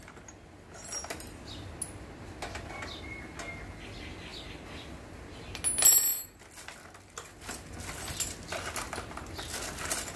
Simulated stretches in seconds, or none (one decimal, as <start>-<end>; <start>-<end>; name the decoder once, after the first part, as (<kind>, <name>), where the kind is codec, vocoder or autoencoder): none